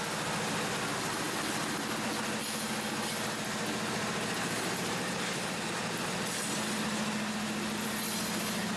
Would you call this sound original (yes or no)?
yes